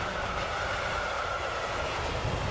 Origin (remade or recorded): recorded